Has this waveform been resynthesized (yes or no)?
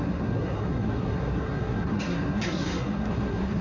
yes